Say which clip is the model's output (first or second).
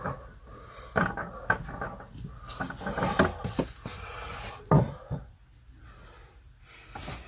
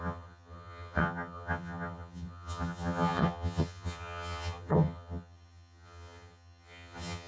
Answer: second